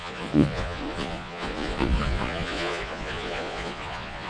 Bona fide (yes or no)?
no